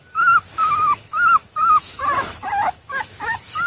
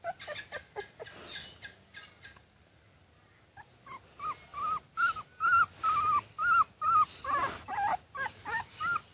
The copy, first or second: first